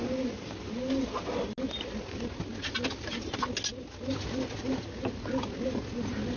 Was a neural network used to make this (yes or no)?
no